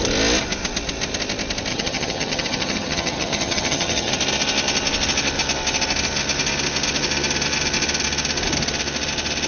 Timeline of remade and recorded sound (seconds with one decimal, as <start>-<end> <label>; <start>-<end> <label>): 0.0-1.7 recorded; 1.7-4.1 remade; 4.1-9.5 recorded